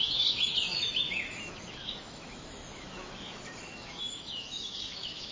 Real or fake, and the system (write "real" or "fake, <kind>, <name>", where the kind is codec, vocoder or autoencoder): fake, autoencoder, DAC-VAE